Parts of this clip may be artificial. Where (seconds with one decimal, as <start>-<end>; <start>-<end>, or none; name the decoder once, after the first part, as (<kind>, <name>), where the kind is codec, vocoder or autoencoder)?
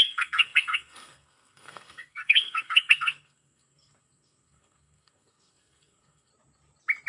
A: 0.0-6.3 (codec, SNAC)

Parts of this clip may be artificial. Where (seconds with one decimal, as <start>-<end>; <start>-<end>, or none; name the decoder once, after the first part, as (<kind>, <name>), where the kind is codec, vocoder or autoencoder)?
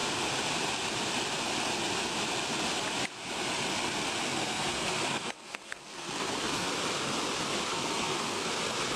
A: 4.2-6.7 (codec, SNAC); 7.7-8.5